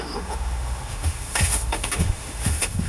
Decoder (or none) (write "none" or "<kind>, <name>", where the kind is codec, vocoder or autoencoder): autoencoder, DAC-VAE